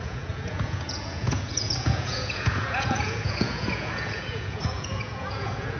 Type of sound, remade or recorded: remade